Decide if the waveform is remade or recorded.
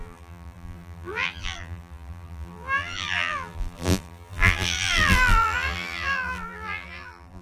remade